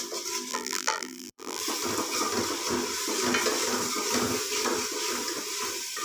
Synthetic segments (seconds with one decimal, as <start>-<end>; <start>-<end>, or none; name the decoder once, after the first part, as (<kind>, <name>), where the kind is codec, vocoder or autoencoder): 0.5-1.6 (vocoder, BigVGAN v2)